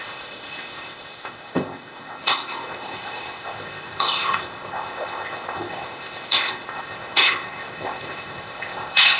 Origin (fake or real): fake